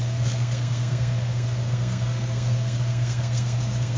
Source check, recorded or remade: remade